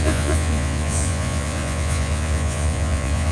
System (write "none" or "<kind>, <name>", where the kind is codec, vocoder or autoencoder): vocoder, Vocos